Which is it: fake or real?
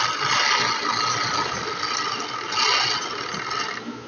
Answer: real